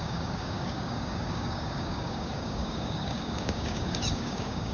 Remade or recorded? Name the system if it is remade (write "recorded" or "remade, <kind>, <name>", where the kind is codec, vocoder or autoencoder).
remade, codec, DAC